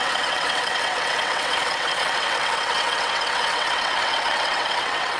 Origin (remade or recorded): remade